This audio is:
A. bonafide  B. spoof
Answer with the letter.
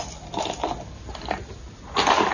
A